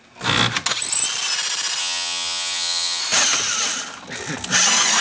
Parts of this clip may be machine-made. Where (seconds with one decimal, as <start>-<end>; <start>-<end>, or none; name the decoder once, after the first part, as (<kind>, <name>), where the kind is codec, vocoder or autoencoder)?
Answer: 1.8-3.0 (vocoder, HiFi-GAN)